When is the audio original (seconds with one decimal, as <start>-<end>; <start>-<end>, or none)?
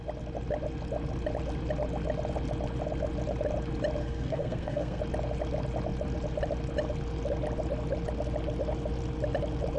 0.0-4.0; 5.0-9.8